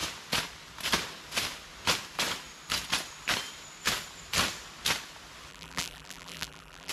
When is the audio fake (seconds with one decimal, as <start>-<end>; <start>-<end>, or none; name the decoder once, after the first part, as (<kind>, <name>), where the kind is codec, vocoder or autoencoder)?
5.5-6.9 (vocoder, BigVGAN v2)